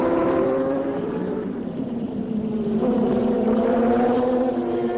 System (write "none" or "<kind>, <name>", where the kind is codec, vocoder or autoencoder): vocoder, BigVGAN v2